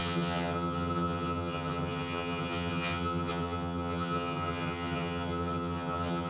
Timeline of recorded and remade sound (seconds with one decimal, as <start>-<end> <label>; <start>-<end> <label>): 0.0-6.3 remade